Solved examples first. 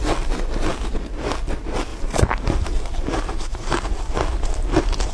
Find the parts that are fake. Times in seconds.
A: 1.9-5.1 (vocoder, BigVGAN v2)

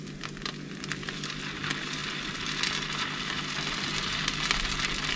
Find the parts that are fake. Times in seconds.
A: none

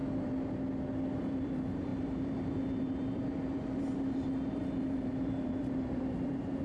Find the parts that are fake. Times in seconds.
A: 1.2-6.6 (vocoder, BigVGAN v2)